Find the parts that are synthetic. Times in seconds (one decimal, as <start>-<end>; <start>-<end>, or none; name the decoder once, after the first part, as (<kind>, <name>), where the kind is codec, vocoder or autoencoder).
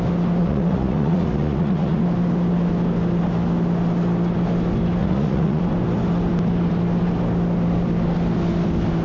0.4-2.0 (vocoder, Vocos); 5.0-5.6